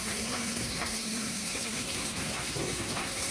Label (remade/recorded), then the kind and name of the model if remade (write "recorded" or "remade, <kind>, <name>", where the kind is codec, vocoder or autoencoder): remade, codec, SNAC